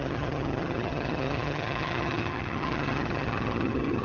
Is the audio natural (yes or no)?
no